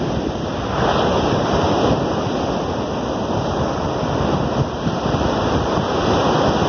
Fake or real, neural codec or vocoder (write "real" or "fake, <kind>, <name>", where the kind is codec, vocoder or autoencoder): real